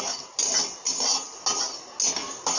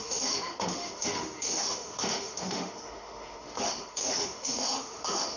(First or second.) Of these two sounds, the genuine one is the first